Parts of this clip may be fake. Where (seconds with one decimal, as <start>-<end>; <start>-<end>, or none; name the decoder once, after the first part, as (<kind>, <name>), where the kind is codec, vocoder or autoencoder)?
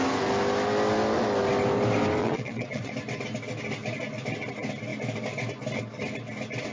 2.2-2.9 (vocoder, WaveNeXt)